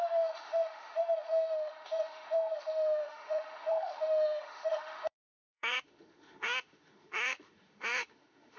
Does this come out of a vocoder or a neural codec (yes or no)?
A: yes